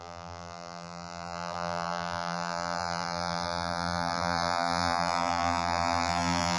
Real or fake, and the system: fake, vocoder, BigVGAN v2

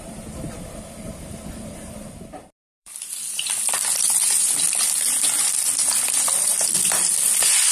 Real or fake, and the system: fake, vocoder, BigVGAN v2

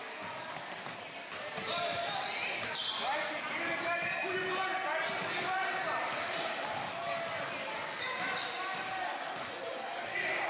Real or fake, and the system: real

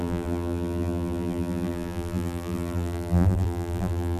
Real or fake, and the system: fake, vocoder, BigVGAN v2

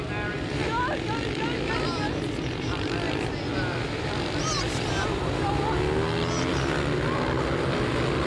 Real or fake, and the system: real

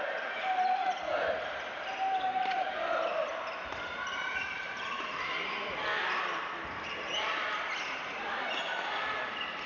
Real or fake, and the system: fake, vocoder, BigVGAN v2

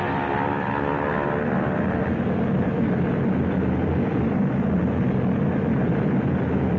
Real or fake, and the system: fake, vocoder, BigVGAN v2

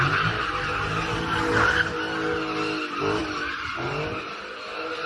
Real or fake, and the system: real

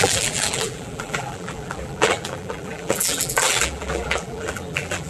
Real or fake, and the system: fake, vocoder, BigVGAN v2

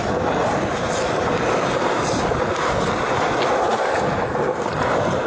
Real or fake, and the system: real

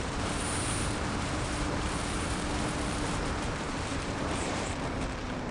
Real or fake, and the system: fake, vocoder, BigVGAN v2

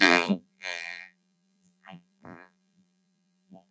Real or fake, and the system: fake, vocoder, BigVGAN v2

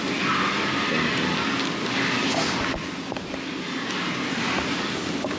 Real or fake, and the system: real